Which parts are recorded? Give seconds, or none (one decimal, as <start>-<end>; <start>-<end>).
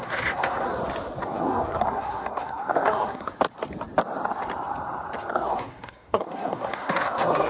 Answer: 0.7-1.2; 3.3-5.3